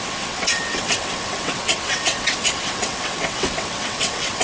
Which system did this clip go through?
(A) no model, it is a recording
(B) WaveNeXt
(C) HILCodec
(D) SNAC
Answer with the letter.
B